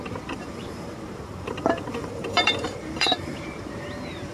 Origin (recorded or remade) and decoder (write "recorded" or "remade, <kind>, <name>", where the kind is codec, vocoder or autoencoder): remade, vocoder, BigVGAN v2